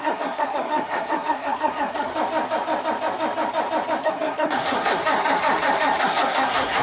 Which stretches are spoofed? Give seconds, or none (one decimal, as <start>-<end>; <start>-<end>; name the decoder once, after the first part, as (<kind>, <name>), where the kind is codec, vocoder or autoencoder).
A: 0.0-2.1 (codec, SNAC); 4.0-5.0; 6.0-6.8